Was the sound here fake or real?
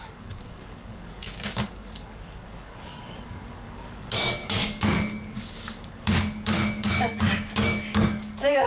fake